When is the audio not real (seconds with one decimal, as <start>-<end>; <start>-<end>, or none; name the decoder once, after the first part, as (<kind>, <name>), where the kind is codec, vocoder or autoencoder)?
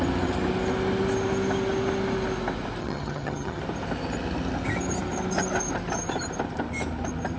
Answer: 2.8-3.6 (vocoder, HiFi-GAN)